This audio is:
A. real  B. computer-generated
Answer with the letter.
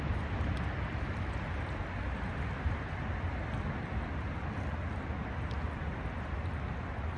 A